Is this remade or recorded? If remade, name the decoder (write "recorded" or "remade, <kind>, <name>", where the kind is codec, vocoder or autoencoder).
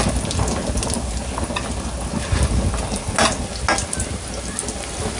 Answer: recorded